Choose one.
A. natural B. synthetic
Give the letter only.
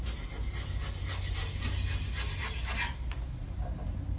A